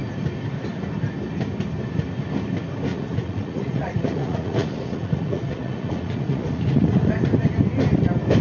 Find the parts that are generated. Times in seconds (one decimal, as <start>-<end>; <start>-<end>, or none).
2.9-7.1